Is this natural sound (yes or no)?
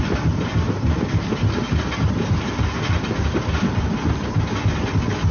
yes